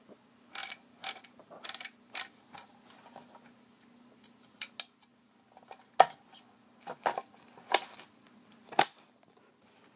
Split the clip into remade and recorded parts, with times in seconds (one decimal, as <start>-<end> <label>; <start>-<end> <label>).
0.0-10.0 recorded